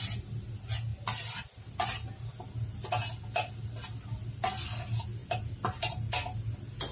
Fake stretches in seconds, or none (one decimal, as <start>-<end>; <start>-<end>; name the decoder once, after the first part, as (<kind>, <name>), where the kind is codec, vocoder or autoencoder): none